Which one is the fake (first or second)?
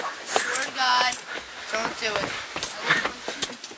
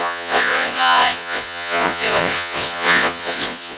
second